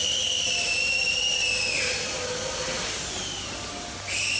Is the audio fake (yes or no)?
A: no